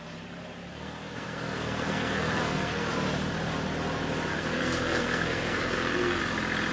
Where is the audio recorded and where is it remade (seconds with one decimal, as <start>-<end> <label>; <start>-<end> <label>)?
0.0-0.7 recorded; 0.7-2.9 remade; 2.9-4.3 recorded; 4.3-6.2 remade; 6.2-6.7 recorded

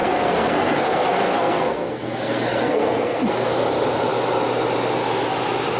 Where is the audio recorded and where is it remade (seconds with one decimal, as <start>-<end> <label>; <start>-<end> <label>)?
0.0-3.5 remade; 3.5-5.8 recorded

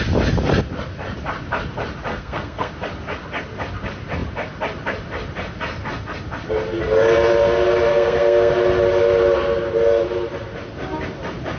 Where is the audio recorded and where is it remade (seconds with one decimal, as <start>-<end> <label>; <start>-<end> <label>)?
0.0-2.1 recorded; 2.1-2.7 remade; 2.7-7.9 recorded; 7.9-8.5 remade; 8.5-11.6 recorded

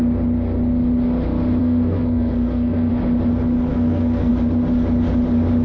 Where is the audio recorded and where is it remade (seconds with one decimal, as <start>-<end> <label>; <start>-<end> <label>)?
0.0-1.6 recorded; 1.6-2.9 remade; 2.9-3.7 recorded; 3.7-4.3 remade; 4.3-5.6 recorded

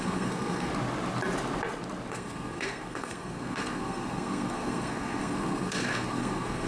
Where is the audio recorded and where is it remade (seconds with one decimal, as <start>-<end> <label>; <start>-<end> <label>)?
0.0-0.7 remade; 0.7-2.1 recorded; 2.1-6.7 remade